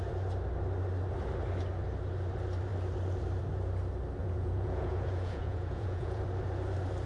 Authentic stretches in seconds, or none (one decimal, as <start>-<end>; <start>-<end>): 0.0-4.2; 6.2-7.1